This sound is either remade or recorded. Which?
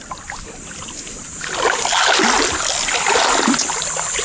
recorded